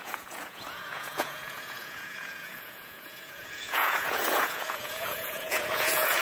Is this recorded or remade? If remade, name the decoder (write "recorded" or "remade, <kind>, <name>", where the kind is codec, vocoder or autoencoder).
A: remade, vocoder, Vocos